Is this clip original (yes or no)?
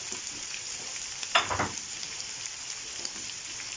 no